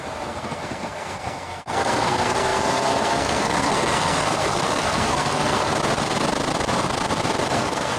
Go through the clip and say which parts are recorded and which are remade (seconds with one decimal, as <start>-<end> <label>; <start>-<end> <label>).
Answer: 0.0-5.7 remade; 5.7-7.5 recorded; 7.5-8.0 remade